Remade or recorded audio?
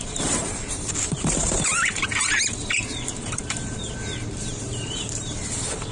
remade